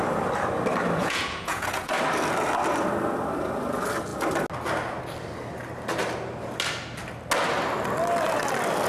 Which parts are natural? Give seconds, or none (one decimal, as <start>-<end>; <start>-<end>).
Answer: 0.0-1.0; 1.9-8.9